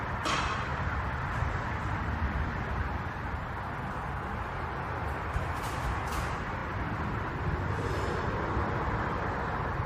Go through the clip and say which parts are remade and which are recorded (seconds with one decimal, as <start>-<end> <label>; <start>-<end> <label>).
0.0-9.9 recorded

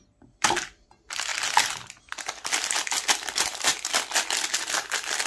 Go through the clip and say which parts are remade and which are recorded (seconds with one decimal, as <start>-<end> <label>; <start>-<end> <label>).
0.0-1.3 recorded; 1.3-2.0 remade; 2.0-5.3 recorded

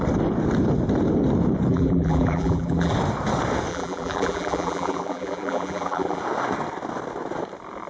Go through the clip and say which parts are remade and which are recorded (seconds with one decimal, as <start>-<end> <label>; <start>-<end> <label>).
0.0-1.7 recorded; 1.7-2.9 remade; 2.9-3.7 recorded; 3.7-6.2 remade; 6.2-7.9 recorded

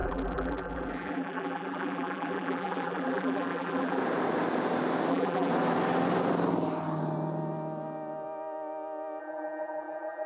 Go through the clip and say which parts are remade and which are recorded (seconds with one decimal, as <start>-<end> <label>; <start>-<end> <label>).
0.0-4.0 remade; 4.0-5.1 recorded; 5.1-5.5 remade; 5.5-9.2 recorded; 9.2-10.3 remade

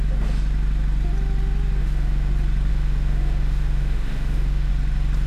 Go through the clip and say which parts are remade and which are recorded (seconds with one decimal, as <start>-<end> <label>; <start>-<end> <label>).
0.0-1.8 recorded; 1.8-2.3 remade; 2.3-2.7 recorded; 2.7-4.7 remade; 4.7-5.3 recorded